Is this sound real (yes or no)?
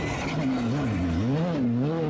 yes